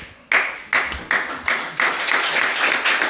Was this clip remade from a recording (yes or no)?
no